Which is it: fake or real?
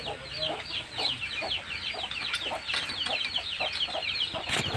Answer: real